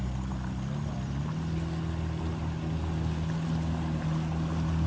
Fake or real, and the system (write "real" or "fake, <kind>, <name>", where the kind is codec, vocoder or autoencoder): real